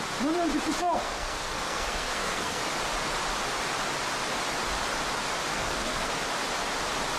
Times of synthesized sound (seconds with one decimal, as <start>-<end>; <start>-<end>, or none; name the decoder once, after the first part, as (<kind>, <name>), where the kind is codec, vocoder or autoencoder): 0.8-2.6 (codec, SNAC); 5.5-6.1

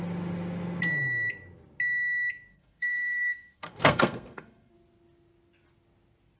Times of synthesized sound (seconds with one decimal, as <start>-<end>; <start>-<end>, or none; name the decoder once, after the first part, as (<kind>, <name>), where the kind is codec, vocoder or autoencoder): 2.5-4.7 (codec, SNAC)

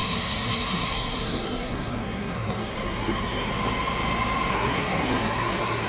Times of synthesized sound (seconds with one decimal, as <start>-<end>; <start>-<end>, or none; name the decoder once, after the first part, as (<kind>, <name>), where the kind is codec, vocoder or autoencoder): 0.0-3.5 (codec, SNAC); 4.5-5.9

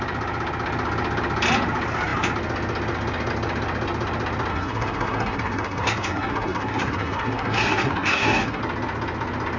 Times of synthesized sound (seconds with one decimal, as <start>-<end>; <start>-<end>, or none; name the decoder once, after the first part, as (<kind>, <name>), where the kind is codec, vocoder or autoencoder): 4.5-8.6 (codec, SNAC)

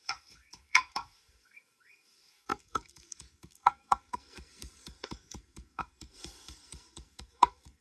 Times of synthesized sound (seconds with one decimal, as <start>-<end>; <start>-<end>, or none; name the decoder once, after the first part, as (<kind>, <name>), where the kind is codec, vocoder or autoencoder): 0.0-7.8 (codec, SNAC)